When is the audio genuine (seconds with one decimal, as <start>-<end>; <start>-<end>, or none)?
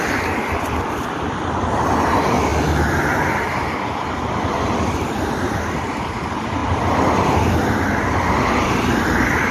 2.5-4.8; 6.6-8.0